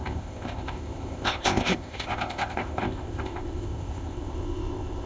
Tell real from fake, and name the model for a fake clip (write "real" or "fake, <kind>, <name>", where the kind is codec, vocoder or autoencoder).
fake, codec, ZipCodec